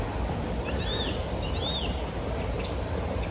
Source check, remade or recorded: recorded